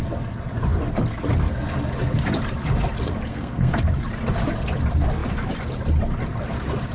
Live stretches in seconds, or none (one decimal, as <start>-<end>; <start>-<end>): 0.0-3.3; 3.8-6.9